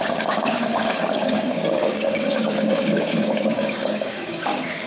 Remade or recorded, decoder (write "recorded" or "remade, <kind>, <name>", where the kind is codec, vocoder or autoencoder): remade, codec, DAC